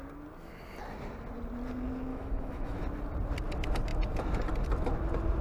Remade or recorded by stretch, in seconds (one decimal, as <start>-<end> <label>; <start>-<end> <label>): 0.0-2.1 recorded; 2.1-2.8 remade; 2.8-5.4 recorded